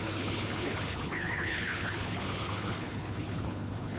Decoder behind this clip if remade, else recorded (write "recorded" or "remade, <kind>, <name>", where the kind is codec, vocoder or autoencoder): remade, codec, HILCodec